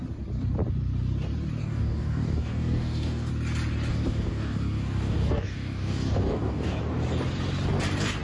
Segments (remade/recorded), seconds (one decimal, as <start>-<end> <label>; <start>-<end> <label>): 0.0-1.6 recorded; 1.6-3.3 remade; 3.3-3.9 recorded; 3.9-6.8 remade; 6.8-8.2 recorded